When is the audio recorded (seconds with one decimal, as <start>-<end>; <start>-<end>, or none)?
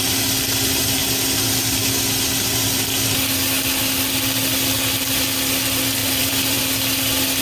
0.0-6.0; 6.6-7.4